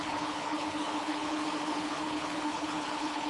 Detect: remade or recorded remade